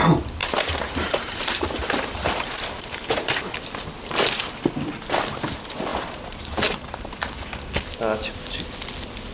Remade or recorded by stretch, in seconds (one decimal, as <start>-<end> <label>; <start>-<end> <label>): 0.0-0.4 recorded; 0.4-3.5 remade; 3.5-5.9 recorded; 5.9-7.4 remade; 7.4-9.3 recorded